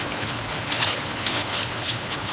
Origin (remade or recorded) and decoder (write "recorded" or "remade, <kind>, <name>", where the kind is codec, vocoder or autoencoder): remade, codec, HILCodec